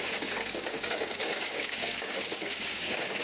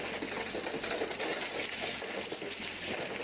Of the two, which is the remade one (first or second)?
first